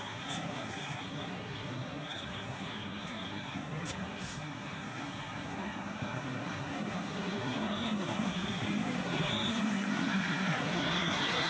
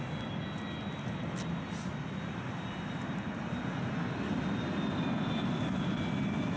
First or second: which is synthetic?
first